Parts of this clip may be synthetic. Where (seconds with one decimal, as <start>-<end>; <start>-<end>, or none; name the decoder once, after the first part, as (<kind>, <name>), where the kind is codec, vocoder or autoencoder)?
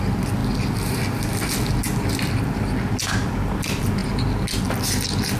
none